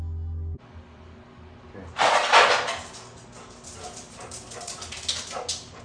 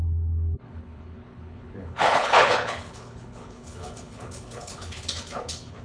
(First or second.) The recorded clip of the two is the first